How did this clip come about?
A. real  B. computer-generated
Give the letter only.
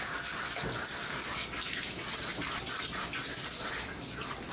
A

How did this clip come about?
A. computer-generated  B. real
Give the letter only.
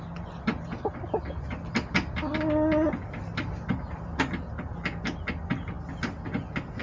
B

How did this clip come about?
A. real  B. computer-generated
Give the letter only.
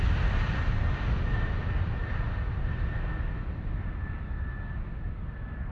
A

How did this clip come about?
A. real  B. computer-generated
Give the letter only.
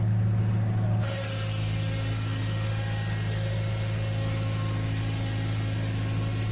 A